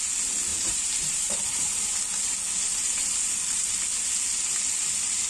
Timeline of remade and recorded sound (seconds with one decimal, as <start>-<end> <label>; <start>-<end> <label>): 0.0-0.5 recorded; 0.5-1.9 remade; 1.9-2.7 recorded; 2.7-3.7 remade; 3.7-5.3 recorded